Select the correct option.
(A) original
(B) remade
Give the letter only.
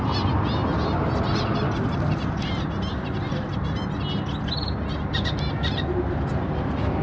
A